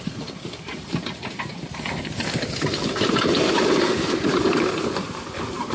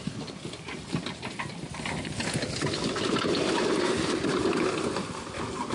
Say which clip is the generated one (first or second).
first